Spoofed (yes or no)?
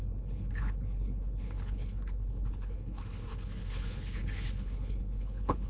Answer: yes